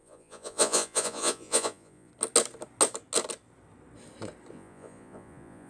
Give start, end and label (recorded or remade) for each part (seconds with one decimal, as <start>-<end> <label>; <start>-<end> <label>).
0.0-2.1 remade; 2.1-4.5 recorded; 4.5-5.7 remade